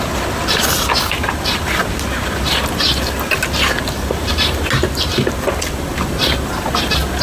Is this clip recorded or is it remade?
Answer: recorded